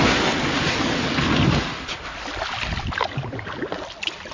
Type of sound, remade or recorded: recorded